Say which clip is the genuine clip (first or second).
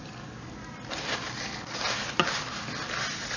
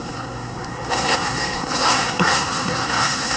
first